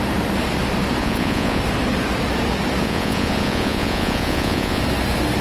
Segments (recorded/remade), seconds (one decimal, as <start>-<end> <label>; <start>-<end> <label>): 0.0-1.0 recorded; 1.0-1.6 remade; 1.6-2.8 recorded; 2.8-4.8 remade; 4.8-5.4 recorded